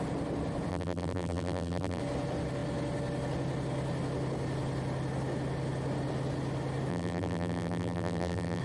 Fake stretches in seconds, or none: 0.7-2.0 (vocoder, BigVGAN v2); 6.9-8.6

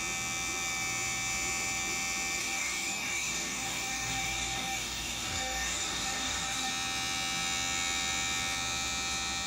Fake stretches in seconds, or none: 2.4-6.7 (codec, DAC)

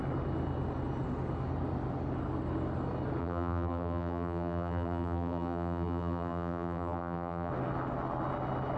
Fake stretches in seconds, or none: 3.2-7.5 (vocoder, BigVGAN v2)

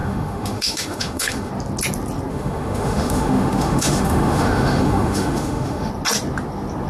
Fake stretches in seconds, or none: 0.0-1.5 (autoencoder, DAC-VAE); 2.3-5.9

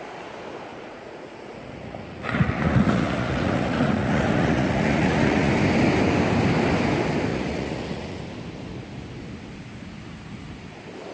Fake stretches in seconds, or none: 0.7-5.5 (vocoder, Vocos); 7.3-8.2